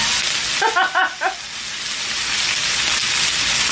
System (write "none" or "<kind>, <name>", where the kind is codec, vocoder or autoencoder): none